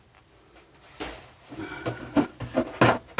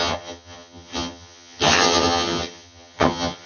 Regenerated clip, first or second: second